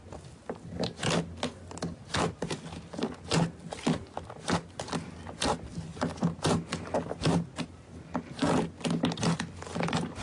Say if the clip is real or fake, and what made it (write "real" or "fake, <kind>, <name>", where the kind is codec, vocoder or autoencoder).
real